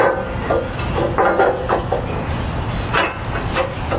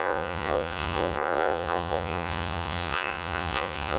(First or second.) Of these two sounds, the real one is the first